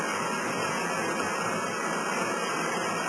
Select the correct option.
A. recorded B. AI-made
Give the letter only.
A